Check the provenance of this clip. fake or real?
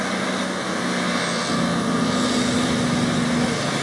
real